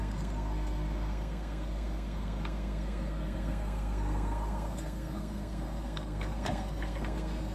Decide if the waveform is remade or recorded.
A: remade